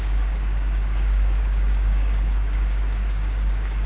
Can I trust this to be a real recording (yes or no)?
no